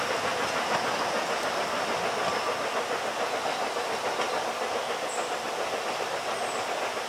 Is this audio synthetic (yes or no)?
no